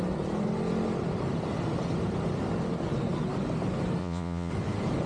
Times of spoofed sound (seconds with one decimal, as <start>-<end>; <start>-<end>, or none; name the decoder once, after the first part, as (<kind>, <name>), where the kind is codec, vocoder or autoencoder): 4.0-4.5 (vocoder, Vocos)